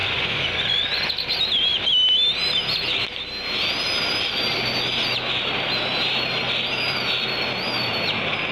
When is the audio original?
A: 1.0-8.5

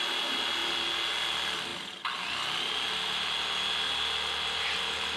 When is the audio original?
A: 0.0-5.2

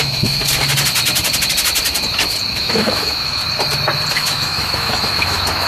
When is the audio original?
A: 0.4-2.5; 3.4-4.1

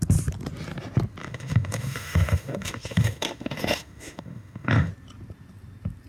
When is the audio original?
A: 0.0-1.2; 4.9-6.1